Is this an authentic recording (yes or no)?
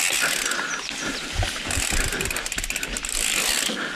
yes